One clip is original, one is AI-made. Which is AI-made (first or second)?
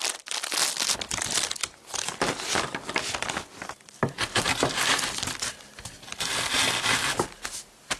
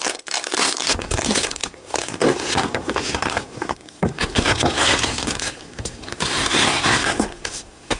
second